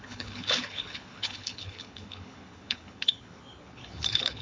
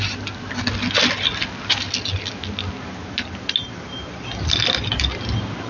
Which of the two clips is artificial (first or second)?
first